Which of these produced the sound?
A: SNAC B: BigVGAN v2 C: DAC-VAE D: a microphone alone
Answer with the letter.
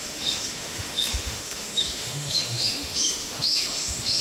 C